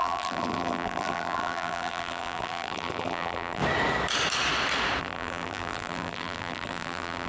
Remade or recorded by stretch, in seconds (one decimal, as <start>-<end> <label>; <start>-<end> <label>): 0.0-3.6 remade; 3.6-5.0 recorded; 5.0-7.3 remade